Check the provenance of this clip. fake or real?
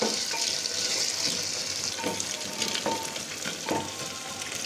real